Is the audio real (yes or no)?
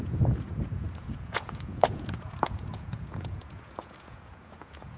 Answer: no